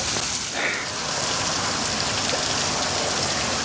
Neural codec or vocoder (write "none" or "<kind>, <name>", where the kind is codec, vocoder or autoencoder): none